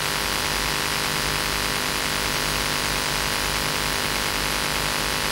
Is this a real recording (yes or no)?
yes